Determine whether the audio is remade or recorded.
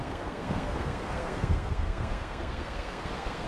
remade